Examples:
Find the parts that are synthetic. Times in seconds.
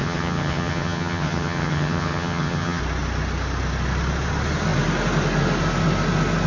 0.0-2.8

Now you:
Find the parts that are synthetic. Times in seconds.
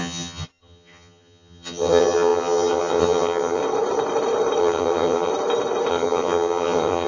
0.0-3.6; 4.6-5.3; 5.9-7.1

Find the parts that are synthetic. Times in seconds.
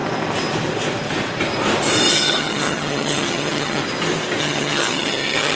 2.1-3.8; 4.4-5.6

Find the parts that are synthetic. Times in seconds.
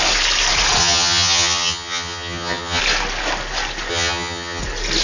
0.8-2.8; 3.9-4.6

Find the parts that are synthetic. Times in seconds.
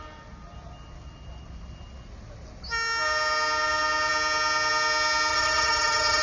5.3-6.2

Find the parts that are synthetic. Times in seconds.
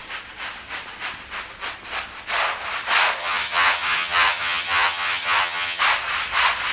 3.2-5.8